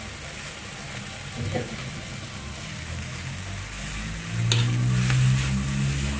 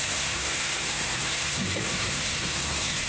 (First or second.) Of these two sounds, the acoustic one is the first